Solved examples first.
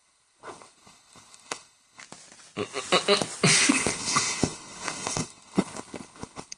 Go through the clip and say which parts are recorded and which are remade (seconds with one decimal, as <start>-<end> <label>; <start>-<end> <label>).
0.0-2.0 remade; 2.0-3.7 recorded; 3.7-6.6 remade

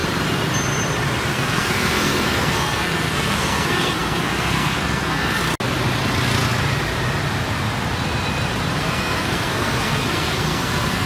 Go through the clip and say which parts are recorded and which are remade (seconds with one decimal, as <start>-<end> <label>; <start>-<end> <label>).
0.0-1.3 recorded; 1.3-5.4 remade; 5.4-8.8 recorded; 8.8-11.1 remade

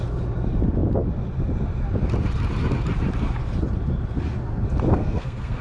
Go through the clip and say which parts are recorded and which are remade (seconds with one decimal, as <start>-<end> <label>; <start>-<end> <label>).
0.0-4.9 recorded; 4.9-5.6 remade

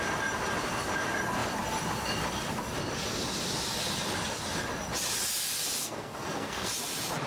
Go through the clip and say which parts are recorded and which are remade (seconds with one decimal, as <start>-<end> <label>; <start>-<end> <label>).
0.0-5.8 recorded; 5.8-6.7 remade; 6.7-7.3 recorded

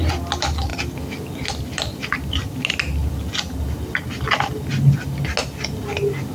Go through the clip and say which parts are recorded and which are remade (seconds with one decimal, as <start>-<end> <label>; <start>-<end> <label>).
0.0-6.3 recorded

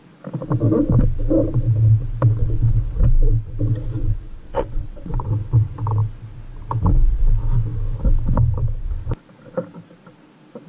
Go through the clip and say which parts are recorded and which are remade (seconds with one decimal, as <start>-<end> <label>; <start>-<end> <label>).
0.0-2.4 recorded; 2.4-3.0 remade; 3.0-4.0 recorded; 4.0-5.3 remade; 5.3-10.7 recorded